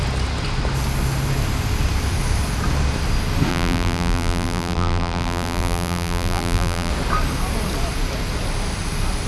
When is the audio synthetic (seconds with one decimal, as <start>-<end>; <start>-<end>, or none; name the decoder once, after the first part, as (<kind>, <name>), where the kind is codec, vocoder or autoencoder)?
3.5-6.9 (vocoder, BigVGAN v2)